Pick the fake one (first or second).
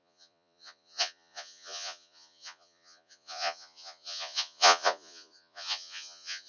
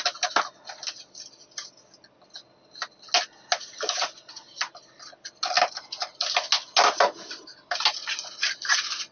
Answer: first